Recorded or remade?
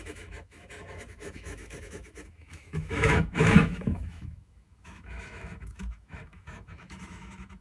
remade